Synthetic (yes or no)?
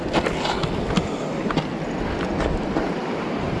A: no